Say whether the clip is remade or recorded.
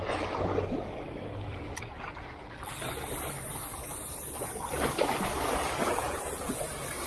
recorded